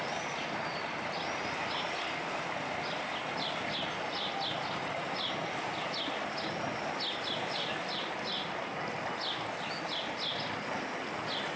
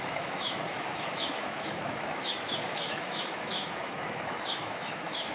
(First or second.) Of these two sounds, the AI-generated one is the second